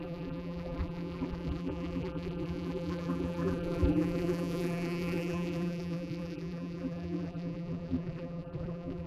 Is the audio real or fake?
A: fake